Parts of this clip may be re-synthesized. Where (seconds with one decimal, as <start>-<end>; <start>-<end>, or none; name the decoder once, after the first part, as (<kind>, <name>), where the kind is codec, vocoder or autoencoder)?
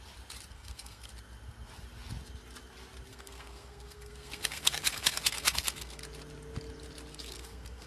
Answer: 0.5-1.1 (codec, SNAC); 3.1-6.0; 7.1-7.9